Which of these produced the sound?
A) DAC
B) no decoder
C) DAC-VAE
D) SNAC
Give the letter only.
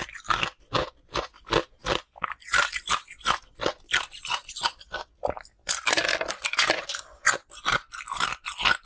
B